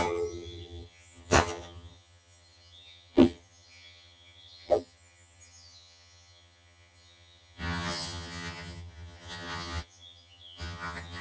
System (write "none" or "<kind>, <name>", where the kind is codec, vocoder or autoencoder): vocoder, HiFi-GAN